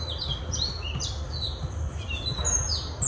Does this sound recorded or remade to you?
recorded